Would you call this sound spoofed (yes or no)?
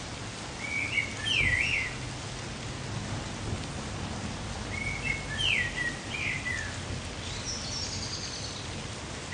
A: no